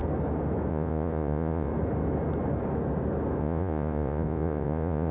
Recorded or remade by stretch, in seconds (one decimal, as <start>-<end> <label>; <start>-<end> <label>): 0.0-0.7 recorded; 0.7-1.7 remade; 1.7-3.4 recorded; 3.4-5.1 remade